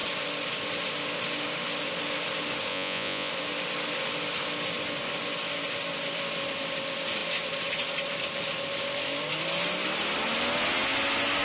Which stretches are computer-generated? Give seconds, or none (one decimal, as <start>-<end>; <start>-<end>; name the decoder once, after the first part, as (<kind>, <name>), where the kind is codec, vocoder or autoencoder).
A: 2.7-3.3 (vocoder, Vocos)